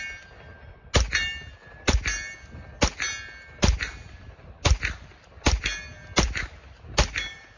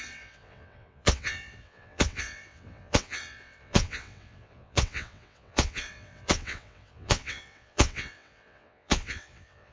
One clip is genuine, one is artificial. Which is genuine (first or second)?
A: first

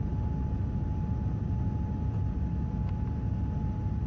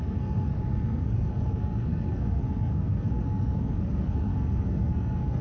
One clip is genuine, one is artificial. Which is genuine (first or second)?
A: first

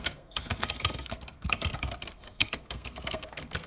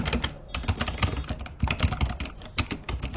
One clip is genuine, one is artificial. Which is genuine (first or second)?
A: second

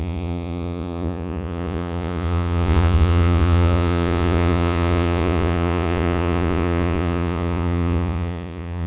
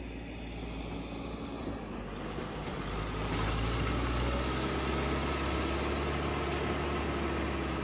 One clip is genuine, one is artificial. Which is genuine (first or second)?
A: second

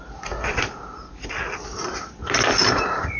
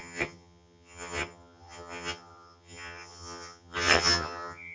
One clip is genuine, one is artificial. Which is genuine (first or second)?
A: first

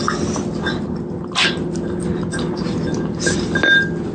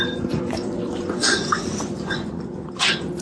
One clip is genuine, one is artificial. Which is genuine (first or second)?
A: first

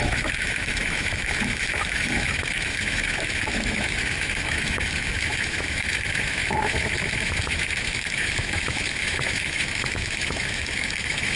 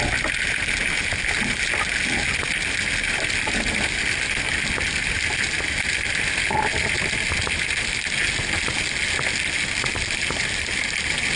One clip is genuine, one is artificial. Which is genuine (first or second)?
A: second